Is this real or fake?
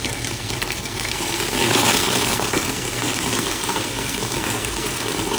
fake